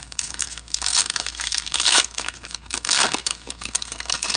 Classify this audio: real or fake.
fake